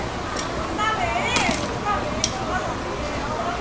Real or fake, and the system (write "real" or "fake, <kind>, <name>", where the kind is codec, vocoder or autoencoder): real